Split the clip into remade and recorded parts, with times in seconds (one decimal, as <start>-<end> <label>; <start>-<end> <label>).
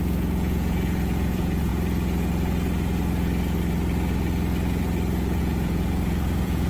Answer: 0.0-1.7 remade; 1.7-5.4 recorded; 5.4-6.7 remade